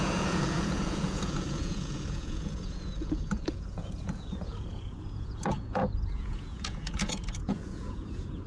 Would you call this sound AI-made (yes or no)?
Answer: yes